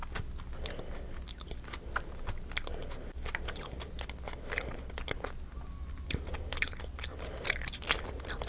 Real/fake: real